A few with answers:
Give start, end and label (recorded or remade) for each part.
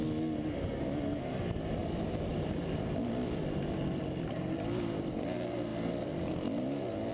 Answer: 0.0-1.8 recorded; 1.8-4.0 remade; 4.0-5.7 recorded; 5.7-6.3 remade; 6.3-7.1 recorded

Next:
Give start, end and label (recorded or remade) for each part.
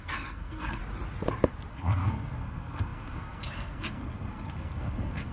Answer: 0.0-0.8 remade; 0.8-1.7 recorded; 1.7-5.3 remade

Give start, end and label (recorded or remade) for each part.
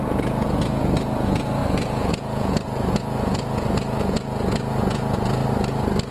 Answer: 0.0-5.4 remade; 5.4-6.1 recorded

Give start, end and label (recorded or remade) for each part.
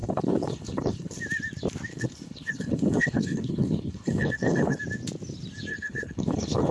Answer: 0.0-1.2 remade; 1.2-1.9 recorded; 1.9-4.8 remade; 4.8-5.7 recorded; 5.7-6.7 remade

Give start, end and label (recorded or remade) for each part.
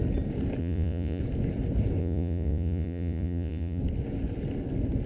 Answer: 0.0-0.6 recorded; 0.6-1.2 remade; 1.2-2.0 recorded; 2.0-3.8 remade; 3.8-5.1 recorded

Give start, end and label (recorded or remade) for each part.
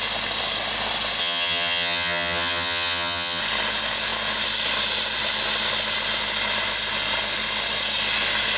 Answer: 0.0-1.2 recorded; 1.2-3.4 remade; 3.4-8.6 recorded